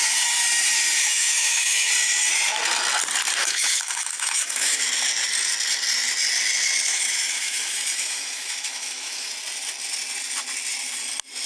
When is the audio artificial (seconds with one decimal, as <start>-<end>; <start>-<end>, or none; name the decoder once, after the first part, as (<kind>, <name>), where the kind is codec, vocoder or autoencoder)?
1.0-1.9 (autoencoder, DAC-VAE); 3.4-4.8; 6.9-9.3